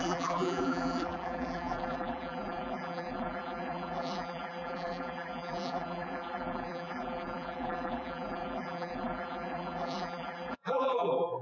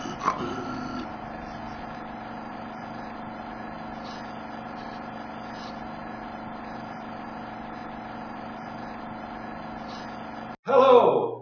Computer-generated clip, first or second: first